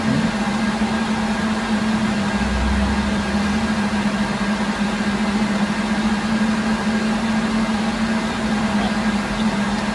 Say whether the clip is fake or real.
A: real